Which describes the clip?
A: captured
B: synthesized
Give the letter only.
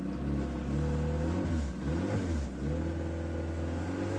A